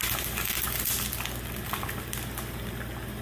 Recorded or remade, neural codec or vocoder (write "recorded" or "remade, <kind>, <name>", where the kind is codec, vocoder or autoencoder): recorded